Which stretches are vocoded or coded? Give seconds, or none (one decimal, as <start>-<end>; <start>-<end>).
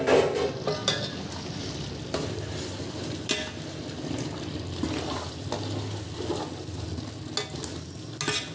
none